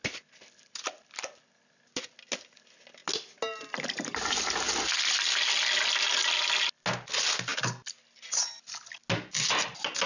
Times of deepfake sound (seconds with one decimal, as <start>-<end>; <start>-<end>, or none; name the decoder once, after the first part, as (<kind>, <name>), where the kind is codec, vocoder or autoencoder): none